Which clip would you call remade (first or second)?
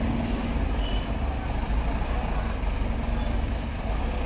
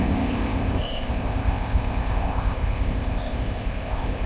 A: second